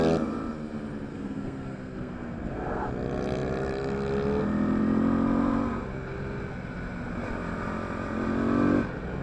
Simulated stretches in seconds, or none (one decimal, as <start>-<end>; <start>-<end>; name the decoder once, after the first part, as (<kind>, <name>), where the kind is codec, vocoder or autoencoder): 1.1-2.9 (codec, SNAC)